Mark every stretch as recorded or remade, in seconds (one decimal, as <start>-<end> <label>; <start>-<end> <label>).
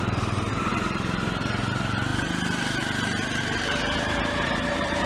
0.0-2.1 remade; 2.1-3.4 recorded; 3.4-5.1 remade